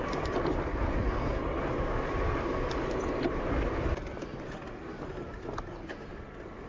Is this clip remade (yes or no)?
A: no